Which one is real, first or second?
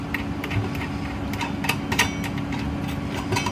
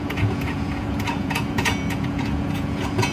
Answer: first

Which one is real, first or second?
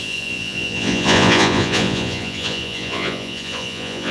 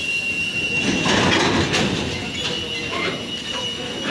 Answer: second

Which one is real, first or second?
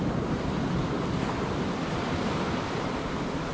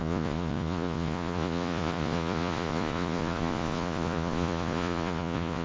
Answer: first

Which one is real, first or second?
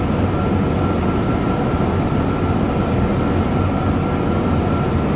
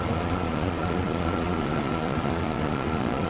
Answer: first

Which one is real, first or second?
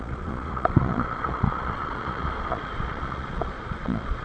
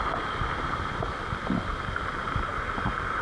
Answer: second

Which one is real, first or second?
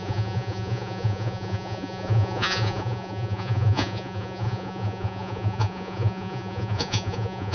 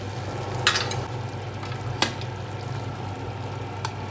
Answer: second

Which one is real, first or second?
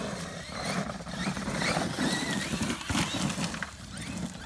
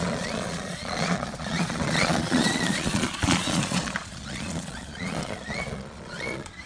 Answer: first